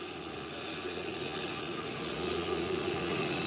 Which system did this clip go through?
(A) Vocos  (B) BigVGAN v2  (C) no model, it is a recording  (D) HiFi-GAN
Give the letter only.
A